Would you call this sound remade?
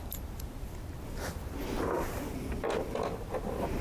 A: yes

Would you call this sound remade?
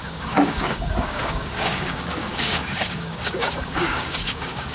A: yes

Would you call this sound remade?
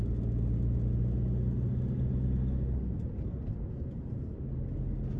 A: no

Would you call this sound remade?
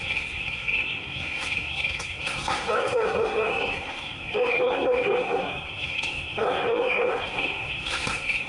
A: yes